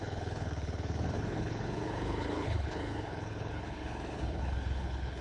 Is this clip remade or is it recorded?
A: remade